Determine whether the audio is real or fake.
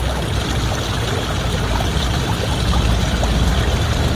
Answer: real